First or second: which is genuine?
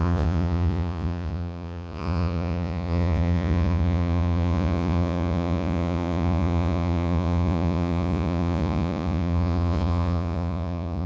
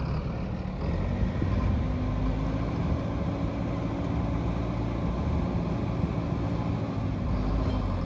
second